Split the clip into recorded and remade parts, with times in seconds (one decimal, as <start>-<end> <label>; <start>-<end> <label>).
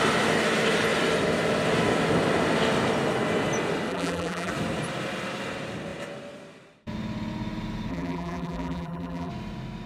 0.0-3.9 recorded; 3.9-4.5 remade; 4.5-7.9 recorded; 7.9-9.3 remade; 9.3-9.9 recorded